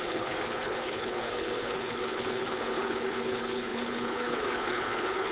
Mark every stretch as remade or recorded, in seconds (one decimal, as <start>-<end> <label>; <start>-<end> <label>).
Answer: 0.0-5.3 remade